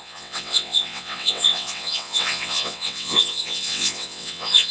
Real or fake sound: fake